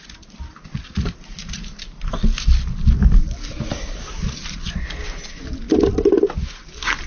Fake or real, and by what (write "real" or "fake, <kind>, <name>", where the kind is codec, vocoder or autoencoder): real